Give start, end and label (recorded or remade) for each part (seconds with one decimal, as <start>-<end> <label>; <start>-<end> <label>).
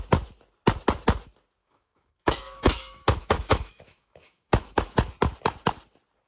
0.0-1.6 recorded; 1.6-5.1 remade; 5.1-6.3 recorded